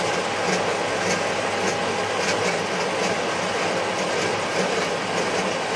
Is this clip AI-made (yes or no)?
no